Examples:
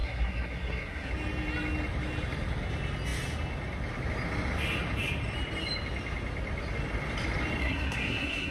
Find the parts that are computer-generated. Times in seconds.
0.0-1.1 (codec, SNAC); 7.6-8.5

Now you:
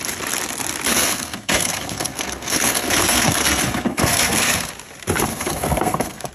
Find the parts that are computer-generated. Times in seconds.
0.9-4.7 (codec, SNAC); 5.3-6.3

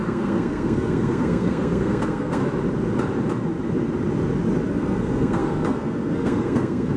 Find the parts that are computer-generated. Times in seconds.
0.0-2.4 (codec, SNAC); 4.7-7.0

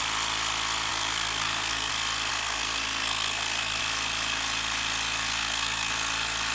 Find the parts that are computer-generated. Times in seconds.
0.9-1.9 (codec, SNAC); 2.3-3.8; 5.3-5.9

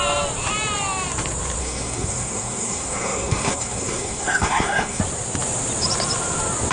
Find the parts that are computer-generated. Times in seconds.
1.6-5.0 (codec, SNAC)

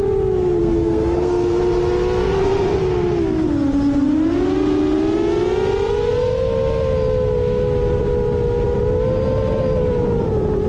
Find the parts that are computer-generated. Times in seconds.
0.6-1.6 (codec, SNAC); 2.2-2.8